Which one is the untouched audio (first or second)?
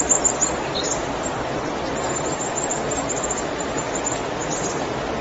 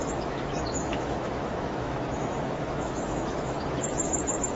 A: first